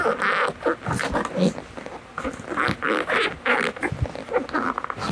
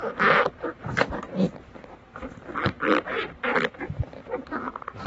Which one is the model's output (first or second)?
second